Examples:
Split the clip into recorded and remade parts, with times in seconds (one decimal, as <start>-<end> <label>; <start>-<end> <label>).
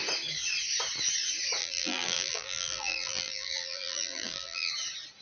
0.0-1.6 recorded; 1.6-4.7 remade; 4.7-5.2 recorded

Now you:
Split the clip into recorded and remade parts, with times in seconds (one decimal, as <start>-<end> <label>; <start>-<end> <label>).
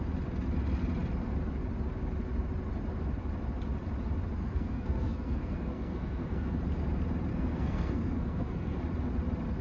0.0-4.4 recorded; 4.4-6.6 remade; 6.6-7.3 recorded; 7.3-8.8 remade; 8.8-9.6 recorded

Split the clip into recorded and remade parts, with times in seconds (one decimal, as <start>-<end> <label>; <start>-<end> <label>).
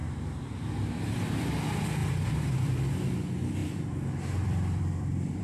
0.0-1.5 remade; 1.5-2.0 recorded; 2.0-2.9 remade; 2.9-3.6 recorded; 3.6-5.4 remade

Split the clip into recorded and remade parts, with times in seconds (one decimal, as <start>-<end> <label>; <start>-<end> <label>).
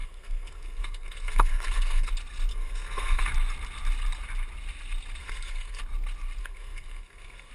0.0-2.1 remade; 2.1-2.5 recorded; 2.5-3.2 remade; 3.2-5.2 recorded; 5.2-5.8 remade; 5.8-6.4 recorded; 6.4-7.5 remade